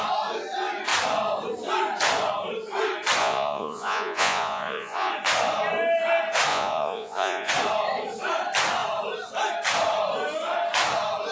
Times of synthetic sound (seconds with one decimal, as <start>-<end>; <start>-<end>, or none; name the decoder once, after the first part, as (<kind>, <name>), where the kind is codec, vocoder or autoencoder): 3.2-5.1 (vocoder, Vocos); 6.5-7.5